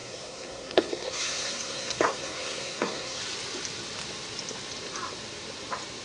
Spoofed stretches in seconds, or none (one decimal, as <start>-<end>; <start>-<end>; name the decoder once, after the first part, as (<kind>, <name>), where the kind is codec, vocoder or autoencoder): 0.0-3.2 (codec, SNAC)